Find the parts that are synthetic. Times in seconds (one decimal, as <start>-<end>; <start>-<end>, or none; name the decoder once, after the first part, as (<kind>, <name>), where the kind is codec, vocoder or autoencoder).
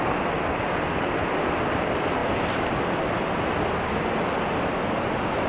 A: none